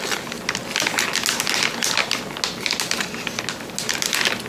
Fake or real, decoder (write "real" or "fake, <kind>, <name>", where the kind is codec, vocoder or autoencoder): real